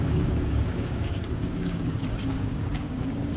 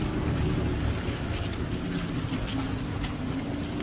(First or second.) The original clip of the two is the second